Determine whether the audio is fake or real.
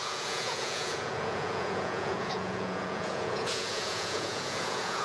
fake